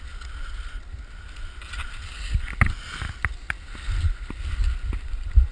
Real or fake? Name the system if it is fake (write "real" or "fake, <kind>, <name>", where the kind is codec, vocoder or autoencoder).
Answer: real